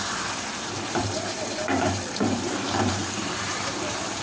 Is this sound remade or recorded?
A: remade